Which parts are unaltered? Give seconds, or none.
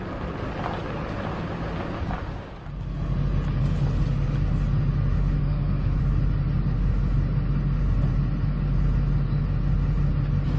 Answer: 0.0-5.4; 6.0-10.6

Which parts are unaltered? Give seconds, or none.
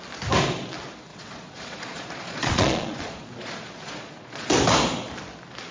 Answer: 0.0-1.1; 4.5-5.7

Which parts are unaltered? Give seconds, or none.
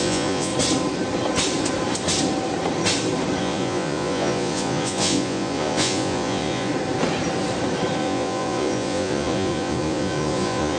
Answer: 0.5-3.4; 6.7-8.0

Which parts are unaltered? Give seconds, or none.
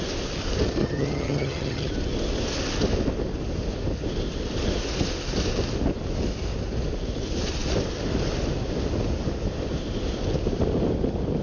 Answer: 0.0-0.8; 1.9-11.4